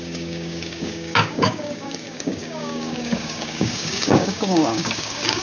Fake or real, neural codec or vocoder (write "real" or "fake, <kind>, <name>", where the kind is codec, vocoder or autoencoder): fake, codec, DAC